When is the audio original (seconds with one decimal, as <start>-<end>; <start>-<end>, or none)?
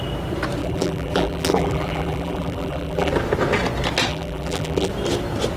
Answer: 0.0-0.6; 3.1-4.1; 4.9-5.6